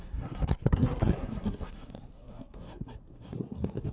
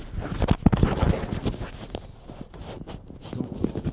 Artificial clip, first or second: first